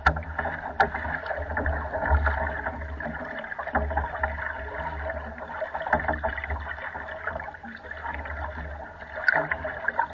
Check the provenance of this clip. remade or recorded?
recorded